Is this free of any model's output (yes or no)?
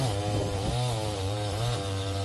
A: no